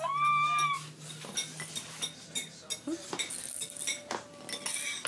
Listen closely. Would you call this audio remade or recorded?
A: recorded